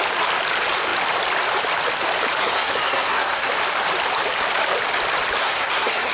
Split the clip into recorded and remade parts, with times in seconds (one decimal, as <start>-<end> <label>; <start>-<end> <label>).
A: 0.0-2.4 recorded; 2.4-3.5 remade; 3.5-5.4 recorded; 5.4-6.1 remade